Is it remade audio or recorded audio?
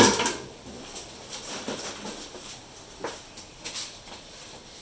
recorded